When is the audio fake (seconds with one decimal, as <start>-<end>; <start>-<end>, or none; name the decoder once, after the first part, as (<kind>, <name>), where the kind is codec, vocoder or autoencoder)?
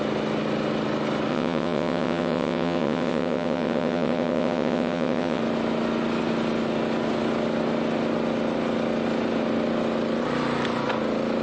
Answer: 1.3-5.4 (vocoder, WaveNeXt)